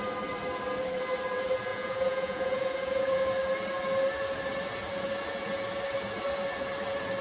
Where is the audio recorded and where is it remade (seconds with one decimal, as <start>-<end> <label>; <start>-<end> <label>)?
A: 0.0-1.7 recorded; 1.7-3.2 remade; 3.2-7.2 recorded